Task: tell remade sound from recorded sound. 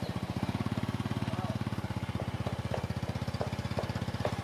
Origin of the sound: recorded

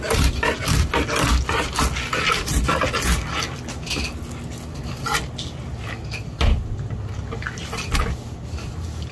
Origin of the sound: recorded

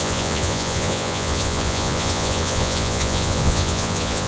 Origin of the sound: remade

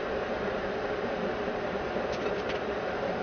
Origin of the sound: remade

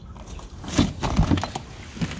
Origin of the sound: recorded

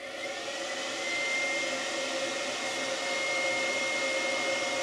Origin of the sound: recorded